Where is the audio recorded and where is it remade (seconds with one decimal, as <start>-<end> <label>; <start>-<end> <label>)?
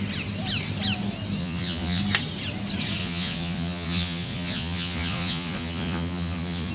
0.0-1.4 recorded; 1.4-2.0 remade; 2.0-3.0 recorded; 3.0-6.7 remade